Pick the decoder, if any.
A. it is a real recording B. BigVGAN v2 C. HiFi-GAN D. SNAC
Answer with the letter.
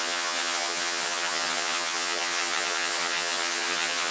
C